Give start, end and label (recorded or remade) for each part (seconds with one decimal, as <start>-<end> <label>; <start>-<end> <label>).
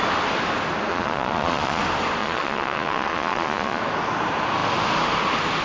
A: 0.0-0.9 recorded; 0.9-1.8 remade; 1.8-2.2 recorded; 2.2-3.8 remade; 3.8-5.6 recorded